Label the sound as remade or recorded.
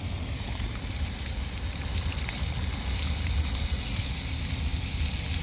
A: recorded